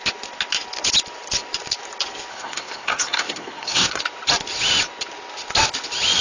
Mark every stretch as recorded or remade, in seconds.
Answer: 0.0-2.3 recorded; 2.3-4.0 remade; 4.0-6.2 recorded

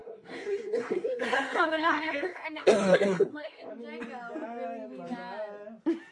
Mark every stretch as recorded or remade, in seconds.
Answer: 0.0-3.7 remade; 3.7-6.1 recorded

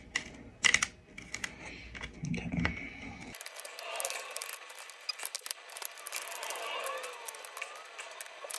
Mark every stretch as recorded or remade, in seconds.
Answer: 0.0-8.6 recorded

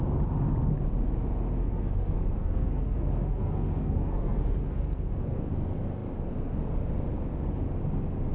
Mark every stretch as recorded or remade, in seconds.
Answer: 0.0-1.6 recorded; 1.6-5.5 remade; 5.5-8.3 recorded

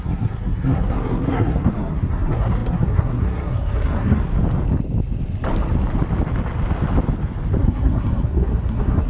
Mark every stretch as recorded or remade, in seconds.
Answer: 0.0-4.3 remade; 4.3-7.6 recorded; 7.6-9.1 remade

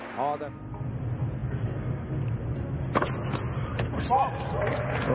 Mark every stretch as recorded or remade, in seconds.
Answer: 0.0-5.1 recorded